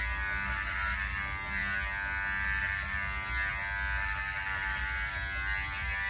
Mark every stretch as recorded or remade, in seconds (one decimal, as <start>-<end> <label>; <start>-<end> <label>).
0.0-6.1 recorded